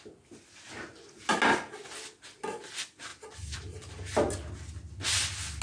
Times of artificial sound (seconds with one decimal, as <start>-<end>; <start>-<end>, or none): none